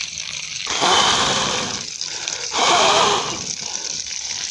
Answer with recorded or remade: remade